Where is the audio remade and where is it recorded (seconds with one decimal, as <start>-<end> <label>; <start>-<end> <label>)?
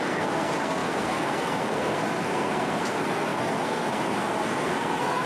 0.0-5.3 remade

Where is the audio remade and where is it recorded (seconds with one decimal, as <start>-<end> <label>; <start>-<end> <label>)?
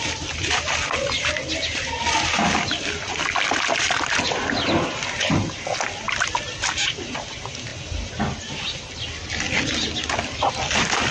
0.0-11.1 recorded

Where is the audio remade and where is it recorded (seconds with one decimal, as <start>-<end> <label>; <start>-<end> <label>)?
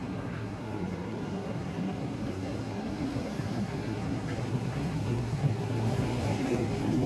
0.0-7.1 remade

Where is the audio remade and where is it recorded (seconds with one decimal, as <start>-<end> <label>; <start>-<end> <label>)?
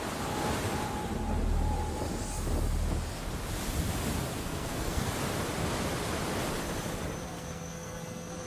0.0-4.4 recorded; 4.4-5.1 remade; 5.1-7.2 recorded; 7.2-8.5 remade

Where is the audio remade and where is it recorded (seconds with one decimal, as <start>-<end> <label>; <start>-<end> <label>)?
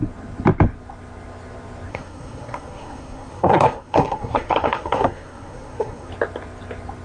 0.0-1.9 recorded; 1.9-6.1 remade; 6.1-7.0 recorded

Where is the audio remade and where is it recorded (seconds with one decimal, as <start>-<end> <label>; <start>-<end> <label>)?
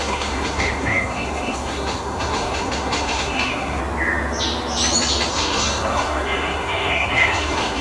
0.0-3.8 remade; 3.8-5.3 recorded; 5.3-7.8 remade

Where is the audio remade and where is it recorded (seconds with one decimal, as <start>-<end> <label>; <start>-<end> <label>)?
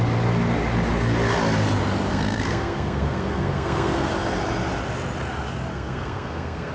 0.0-2.1 recorded; 2.1-4.1 remade; 4.1-5.7 recorded; 5.7-6.7 remade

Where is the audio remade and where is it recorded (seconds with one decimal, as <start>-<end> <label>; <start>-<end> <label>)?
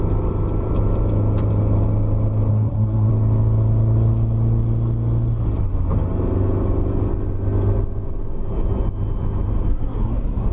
0.0-2.5 recorded; 2.5-3.1 remade; 3.1-9.7 recorded; 9.7-10.5 remade